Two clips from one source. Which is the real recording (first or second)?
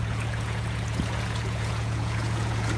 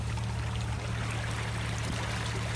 second